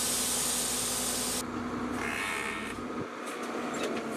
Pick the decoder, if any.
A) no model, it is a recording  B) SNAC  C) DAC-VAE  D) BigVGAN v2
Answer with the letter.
A